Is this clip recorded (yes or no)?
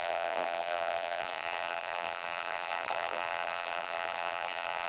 no